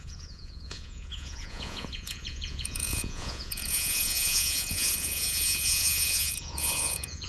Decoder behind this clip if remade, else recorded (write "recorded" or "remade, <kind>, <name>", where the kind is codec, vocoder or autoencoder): remade, vocoder, Vocos